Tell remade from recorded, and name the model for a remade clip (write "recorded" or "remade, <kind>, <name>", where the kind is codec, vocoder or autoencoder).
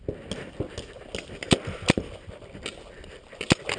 recorded